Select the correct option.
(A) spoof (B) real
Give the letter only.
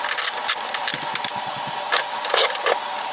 B